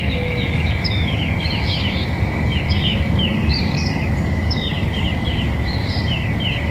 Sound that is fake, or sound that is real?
fake